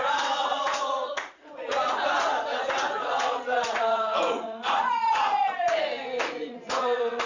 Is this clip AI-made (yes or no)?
yes